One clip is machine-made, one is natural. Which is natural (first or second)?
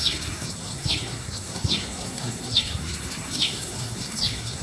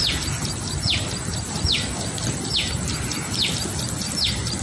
second